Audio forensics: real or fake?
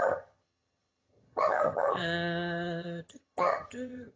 fake